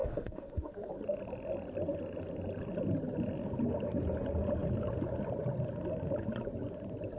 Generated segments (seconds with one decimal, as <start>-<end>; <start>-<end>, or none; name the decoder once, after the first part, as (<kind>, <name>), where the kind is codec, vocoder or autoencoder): 0.0-0.9 (autoencoder, DAC-VAE)